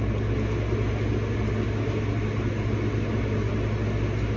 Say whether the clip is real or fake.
real